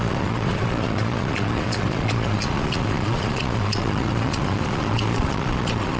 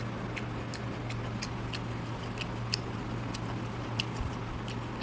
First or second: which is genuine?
second